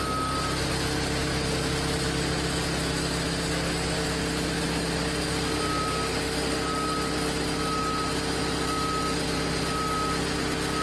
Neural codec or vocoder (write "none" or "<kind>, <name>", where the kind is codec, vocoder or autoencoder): none